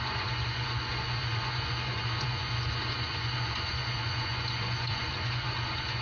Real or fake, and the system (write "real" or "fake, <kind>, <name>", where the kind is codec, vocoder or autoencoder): fake, vocoder, Vocos